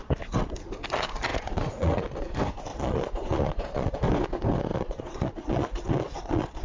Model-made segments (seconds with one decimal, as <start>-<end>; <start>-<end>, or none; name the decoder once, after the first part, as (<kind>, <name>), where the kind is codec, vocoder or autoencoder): 1.3-2.0 (vocoder, Vocos); 2.7-4.0; 4.7-6.6